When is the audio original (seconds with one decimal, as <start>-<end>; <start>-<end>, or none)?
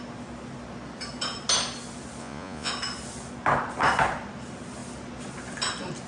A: 0.0-2.2; 2.7-6.1